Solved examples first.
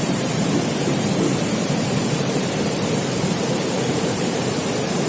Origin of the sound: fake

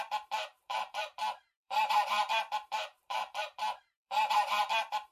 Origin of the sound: fake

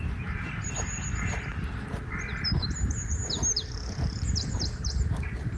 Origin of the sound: real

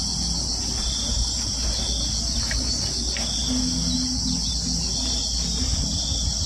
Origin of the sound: real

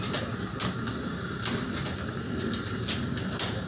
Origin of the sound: real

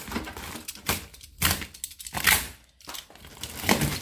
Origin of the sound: real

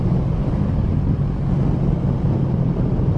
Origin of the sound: real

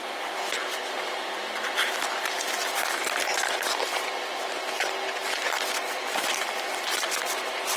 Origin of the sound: real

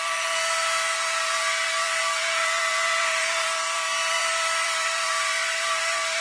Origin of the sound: fake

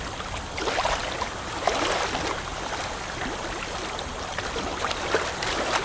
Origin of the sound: real